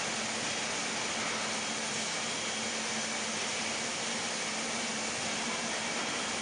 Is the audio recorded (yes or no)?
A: yes